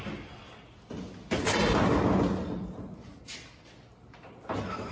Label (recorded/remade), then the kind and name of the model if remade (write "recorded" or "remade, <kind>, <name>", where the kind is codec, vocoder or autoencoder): recorded